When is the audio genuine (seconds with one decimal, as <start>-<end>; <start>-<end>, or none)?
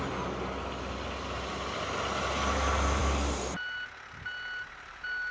0.0-5.3